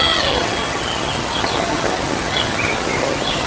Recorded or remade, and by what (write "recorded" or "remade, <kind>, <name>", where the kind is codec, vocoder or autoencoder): remade, vocoder, HiFi-GAN